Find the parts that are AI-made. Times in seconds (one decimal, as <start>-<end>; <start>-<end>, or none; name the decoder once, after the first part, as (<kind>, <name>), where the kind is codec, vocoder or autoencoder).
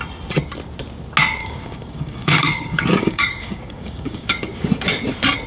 1.4-4.7 (codec, DAC)